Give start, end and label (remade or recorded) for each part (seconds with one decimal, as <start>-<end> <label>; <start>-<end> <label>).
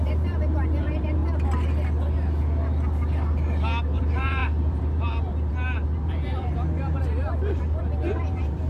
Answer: 0.0-1.2 remade; 1.2-3.8 recorded; 3.8-8.7 remade